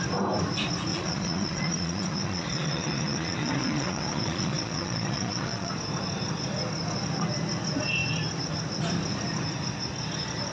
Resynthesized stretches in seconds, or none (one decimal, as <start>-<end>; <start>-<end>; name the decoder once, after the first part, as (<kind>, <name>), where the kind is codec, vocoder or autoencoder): 0.9-5.7 (vocoder, Vocos)